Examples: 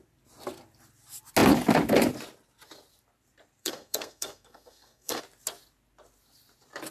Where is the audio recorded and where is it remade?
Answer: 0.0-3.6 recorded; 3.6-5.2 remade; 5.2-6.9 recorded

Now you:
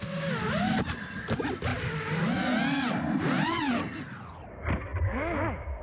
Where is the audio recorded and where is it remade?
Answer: 0.0-5.8 recorded

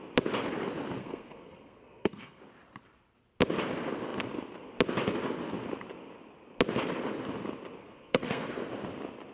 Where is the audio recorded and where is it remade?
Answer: 0.0-1.0 recorded; 1.0-2.4 remade; 2.4-7.8 recorded; 7.8-8.6 remade; 8.6-9.3 recorded

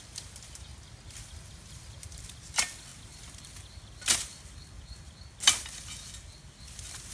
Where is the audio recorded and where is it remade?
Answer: 0.0-7.1 recorded

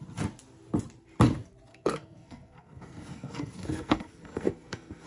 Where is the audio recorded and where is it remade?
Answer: 0.0-1.7 recorded; 1.7-5.1 remade

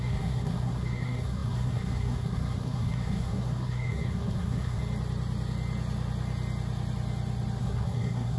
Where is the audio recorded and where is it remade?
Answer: 0.0-4.8 remade; 4.8-7.6 recorded; 7.6-8.4 remade

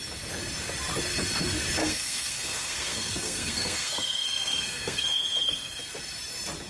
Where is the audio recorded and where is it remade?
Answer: 0.0-1.8 recorded; 1.8-5.8 remade; 5.8-6.7 recorded

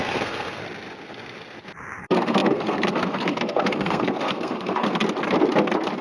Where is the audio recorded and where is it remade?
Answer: 0.0-0.6 remade; 0.6-2.0 recorded; 2.0-5.0 remade; 5.0-6.0 recorded